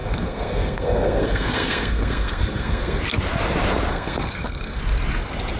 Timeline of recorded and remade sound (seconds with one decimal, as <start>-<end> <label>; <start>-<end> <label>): 0.0-3.0 remade; 3.0-3.9 recorded; 3.9-4.8 remade; 4.8-5.6 recorded